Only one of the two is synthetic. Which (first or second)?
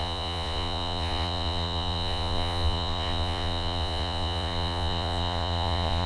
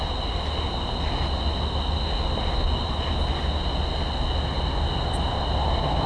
first